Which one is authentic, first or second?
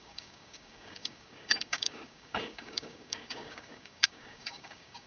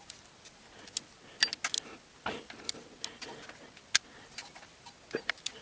second